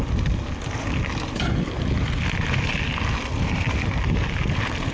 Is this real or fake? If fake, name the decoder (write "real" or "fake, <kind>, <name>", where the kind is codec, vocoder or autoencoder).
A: real